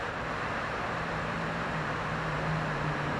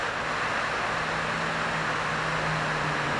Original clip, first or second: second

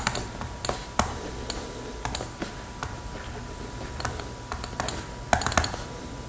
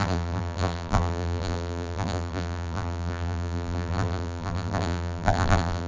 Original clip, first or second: first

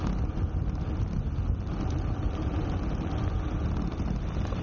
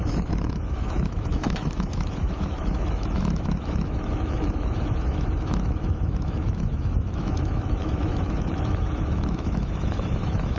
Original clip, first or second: first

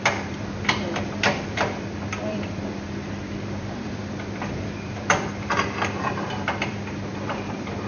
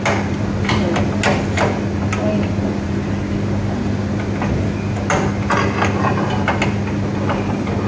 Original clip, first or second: second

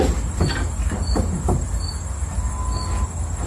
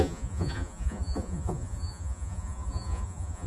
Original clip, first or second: first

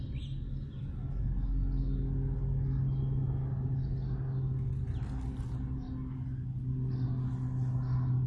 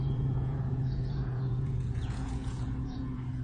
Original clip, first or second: first